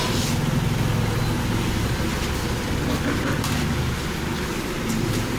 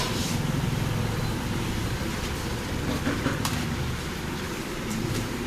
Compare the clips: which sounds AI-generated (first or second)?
second